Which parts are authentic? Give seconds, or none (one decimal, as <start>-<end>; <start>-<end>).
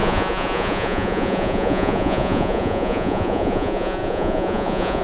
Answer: none